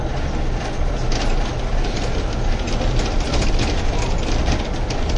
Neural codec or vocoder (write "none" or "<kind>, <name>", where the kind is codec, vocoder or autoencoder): none